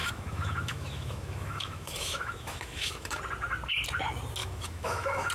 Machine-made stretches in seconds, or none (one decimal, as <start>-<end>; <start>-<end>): 0.0-3.2; 4.4-5.3